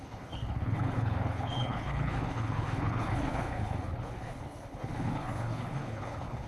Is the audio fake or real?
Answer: fake